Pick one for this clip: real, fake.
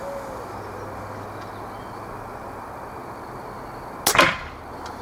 real